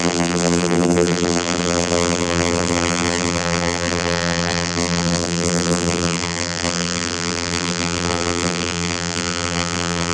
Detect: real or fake fake